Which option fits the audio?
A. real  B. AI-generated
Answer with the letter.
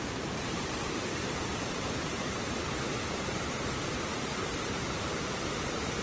B